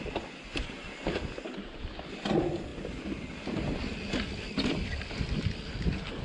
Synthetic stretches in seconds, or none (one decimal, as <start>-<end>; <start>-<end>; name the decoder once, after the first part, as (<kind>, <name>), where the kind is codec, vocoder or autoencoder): none